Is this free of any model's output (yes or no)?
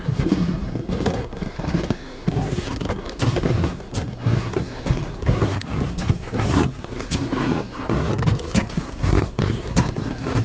no